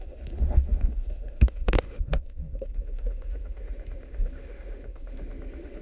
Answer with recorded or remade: remade